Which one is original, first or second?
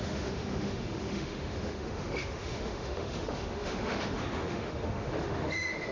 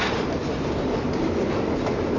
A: second